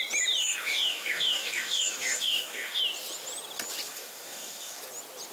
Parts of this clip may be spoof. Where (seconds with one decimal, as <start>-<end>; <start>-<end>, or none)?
0.4-2.8; 3.9-4.8